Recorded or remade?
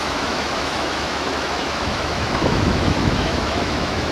remade